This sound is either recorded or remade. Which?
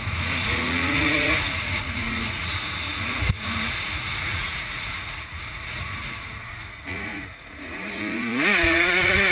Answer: remade